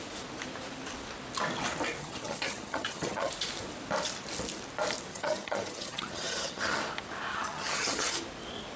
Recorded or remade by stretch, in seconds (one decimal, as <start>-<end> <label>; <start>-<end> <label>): 0.0-2.0 recorded; 2.0-3.3 remade; 3.3-5.1 recorded; 5.1-6.8 remade; 6.8-7.3 recorded; 7.3-8.1 remade; 8.1-8.8 recorded